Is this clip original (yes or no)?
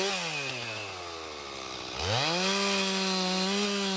yes